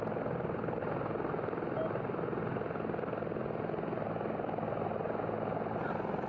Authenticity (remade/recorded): recorded